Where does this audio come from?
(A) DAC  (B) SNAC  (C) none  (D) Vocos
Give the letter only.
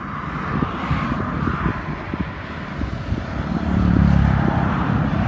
C